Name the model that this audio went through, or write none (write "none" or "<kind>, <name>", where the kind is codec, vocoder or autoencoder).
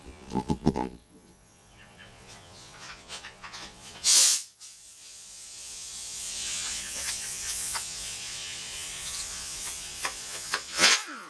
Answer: vocoder, Vocos